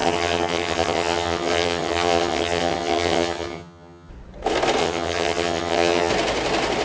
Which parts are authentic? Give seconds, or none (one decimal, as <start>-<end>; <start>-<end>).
4.1-4.8; 6.1-6.8